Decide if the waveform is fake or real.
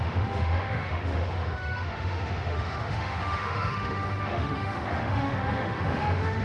fake